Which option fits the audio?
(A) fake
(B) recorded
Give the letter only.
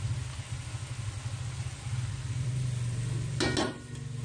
B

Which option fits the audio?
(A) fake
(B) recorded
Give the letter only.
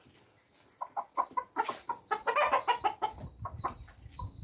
B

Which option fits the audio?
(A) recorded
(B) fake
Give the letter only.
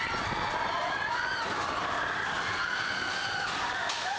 A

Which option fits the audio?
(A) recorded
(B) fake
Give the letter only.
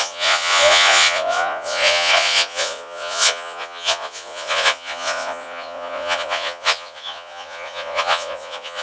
B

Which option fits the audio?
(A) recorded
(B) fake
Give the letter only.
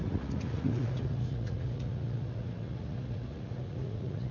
B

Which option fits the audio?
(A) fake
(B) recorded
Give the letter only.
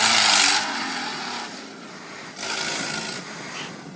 B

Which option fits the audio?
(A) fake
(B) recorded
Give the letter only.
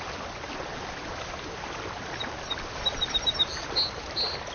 B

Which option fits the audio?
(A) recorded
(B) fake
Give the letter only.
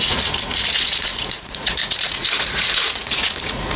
B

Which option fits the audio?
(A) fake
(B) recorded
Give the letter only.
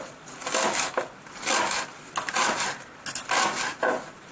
B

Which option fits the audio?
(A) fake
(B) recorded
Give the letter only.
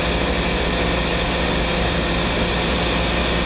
B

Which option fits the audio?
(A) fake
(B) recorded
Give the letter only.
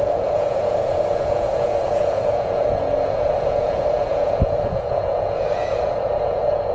A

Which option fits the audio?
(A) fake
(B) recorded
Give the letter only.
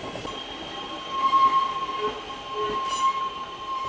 B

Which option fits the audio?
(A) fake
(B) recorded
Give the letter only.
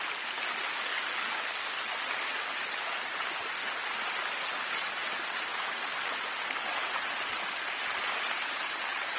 B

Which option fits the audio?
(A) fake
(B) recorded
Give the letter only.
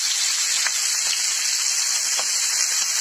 B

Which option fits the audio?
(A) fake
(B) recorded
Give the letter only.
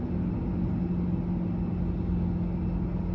B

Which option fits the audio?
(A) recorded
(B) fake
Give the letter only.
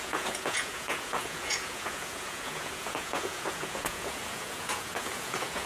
B